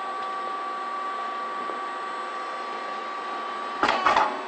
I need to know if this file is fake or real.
real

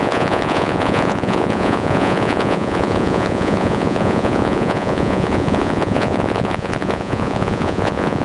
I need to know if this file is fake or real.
fake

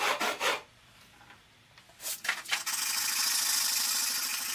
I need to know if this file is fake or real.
real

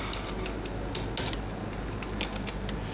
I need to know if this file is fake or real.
real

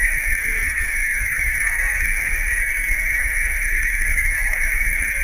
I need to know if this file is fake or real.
fake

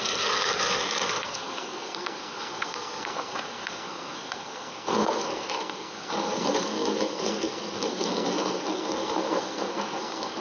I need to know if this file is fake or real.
fake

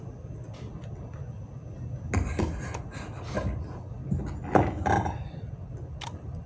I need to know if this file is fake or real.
real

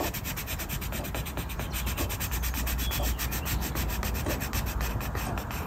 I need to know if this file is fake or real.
real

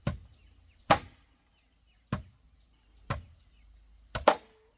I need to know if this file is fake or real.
real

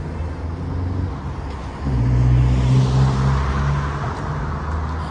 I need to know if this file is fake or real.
real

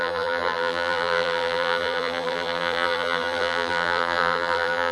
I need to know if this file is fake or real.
fake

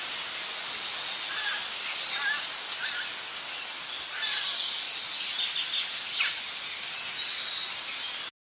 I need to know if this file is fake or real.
real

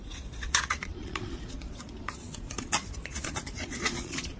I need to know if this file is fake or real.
fake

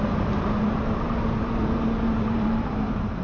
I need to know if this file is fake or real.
fake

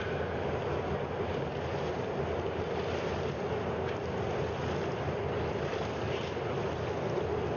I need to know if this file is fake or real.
real